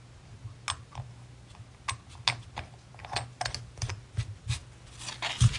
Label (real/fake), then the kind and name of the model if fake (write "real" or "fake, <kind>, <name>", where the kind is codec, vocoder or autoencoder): real